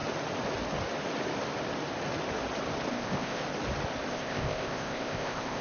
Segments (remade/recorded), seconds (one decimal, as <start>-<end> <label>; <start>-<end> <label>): 0.0-2.9 recorded; 2.9-3.4 remade; 3.4-4.1 recorded; 4.1-5.6 remade